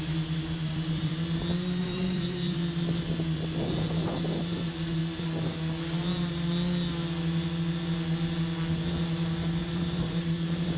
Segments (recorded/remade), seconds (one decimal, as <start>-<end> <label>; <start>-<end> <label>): 0.0-1.1 remade; 1.1-1.8 recorded; 1.8-2.6 remade; 2.6-4.4 recorded; 4.4-5.0 remade; 5.0-9.6 recorded; 9.6-10.8 remade